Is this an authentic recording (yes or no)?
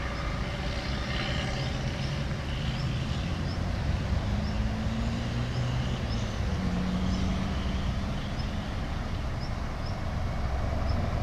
yes